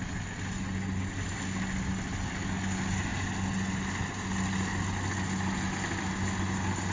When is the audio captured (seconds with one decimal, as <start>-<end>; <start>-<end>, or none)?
0.0-6.9